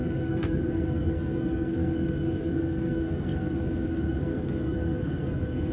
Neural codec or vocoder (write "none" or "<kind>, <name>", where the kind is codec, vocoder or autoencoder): codec, SNAC